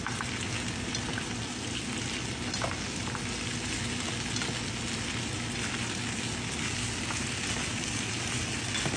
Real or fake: real